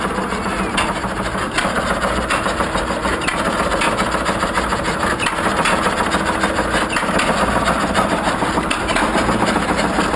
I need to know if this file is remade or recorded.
recorded